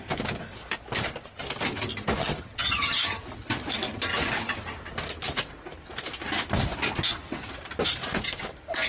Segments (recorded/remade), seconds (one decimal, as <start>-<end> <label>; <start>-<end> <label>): 0.0-2.2 recorded; 2.2-3.2 remade; 3.2-8.9 recorded